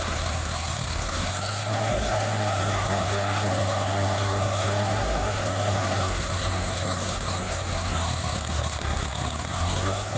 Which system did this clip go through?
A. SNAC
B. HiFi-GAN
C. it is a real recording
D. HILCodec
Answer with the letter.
A